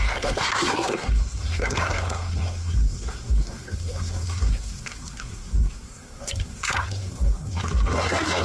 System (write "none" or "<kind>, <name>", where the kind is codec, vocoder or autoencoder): codec, SNAC